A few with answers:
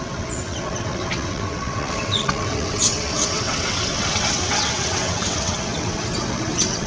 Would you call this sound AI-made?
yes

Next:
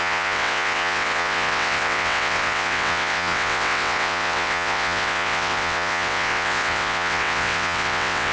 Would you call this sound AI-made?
yes